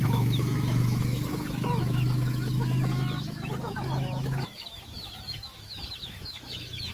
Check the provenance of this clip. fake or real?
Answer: fake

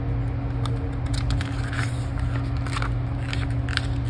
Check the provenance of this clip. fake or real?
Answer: real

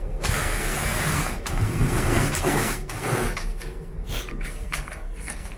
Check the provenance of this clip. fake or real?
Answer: fake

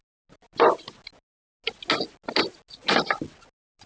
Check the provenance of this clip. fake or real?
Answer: real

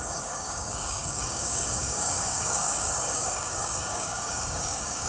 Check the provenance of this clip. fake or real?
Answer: fake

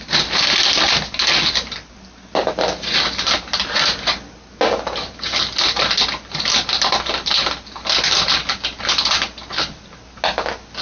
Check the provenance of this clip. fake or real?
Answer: real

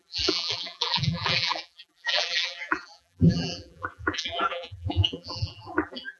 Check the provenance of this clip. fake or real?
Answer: fake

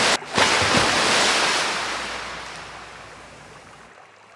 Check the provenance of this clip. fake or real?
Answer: real